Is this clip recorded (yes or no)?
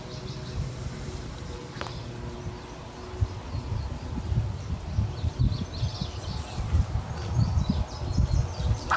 yes